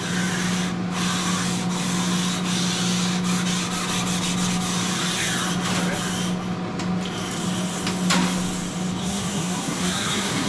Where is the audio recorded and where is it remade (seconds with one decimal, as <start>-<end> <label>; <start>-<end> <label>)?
0.0-9.0 recorded; 9.0-10.5 remade

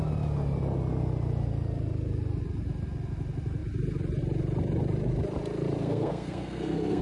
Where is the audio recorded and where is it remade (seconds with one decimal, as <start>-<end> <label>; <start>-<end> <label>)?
0.0-5.8 recorded; 5.8-7.0 remade

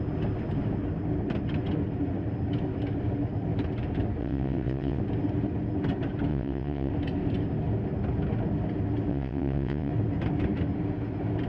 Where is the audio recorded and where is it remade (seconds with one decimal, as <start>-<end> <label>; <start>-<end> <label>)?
0.0-4.2 recorded; 4.2-5.0 remade; 5.0-6.3 recorded; 6.3-6.9 remade; 6.9-9.1 recorded; 9.1-9.9 remade; 9.9-11.5 recorded

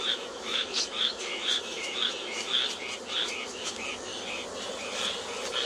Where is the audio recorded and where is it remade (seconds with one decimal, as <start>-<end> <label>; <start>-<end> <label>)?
0.0-2.6 remade; 2.6-3.2 recorded; 3.2-4.1 remade; 4.1-5.7 recorded

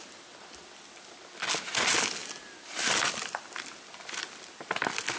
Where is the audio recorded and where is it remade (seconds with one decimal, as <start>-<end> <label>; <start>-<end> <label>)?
0.0-5.2 recorded

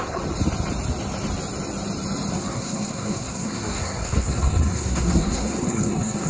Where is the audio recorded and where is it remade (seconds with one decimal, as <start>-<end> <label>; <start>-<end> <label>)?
0.0-2.3 recorded; 2.3-6.3 remade